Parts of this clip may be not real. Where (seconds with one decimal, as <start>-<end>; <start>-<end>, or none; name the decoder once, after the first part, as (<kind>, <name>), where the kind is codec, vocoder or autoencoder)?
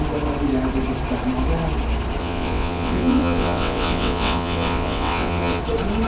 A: 2.2-5.6 (vocoder, WaveNeXt)